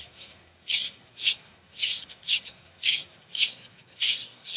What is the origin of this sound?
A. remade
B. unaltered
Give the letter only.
A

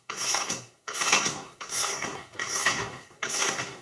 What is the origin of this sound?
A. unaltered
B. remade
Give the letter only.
B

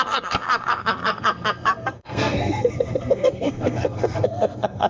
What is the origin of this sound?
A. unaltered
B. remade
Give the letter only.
B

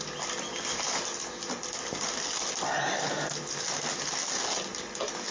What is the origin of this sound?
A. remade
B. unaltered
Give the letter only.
B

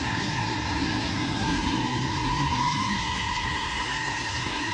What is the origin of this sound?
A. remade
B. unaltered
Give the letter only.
A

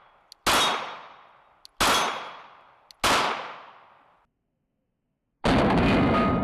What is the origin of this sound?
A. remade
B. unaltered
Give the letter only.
B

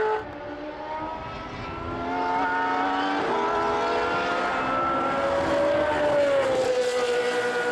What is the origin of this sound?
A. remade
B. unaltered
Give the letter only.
B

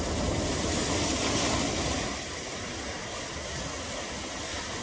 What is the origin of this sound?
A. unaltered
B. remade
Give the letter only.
A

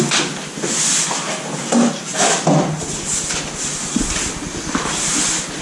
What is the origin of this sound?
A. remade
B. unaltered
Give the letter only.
B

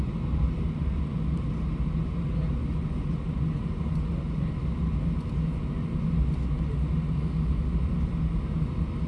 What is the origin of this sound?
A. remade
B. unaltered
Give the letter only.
B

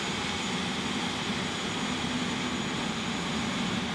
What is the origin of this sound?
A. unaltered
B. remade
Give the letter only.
A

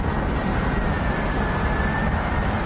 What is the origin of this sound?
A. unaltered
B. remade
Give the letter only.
A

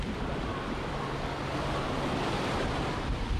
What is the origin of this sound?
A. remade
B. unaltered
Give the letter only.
B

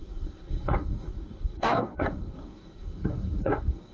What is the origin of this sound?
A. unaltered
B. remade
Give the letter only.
B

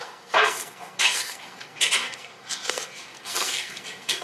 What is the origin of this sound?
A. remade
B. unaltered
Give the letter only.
A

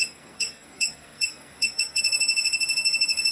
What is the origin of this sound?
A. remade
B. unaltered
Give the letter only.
A